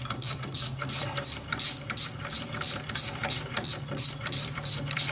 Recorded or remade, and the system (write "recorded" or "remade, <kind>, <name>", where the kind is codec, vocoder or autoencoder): remade, vocoder, BigVGAN v2